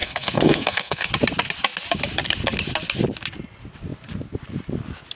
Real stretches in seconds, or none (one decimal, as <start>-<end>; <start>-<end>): 1.1-5.2